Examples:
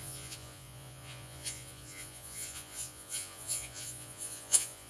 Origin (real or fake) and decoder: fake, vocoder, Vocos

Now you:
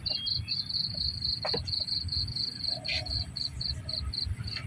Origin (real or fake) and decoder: real